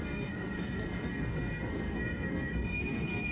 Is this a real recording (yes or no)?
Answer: no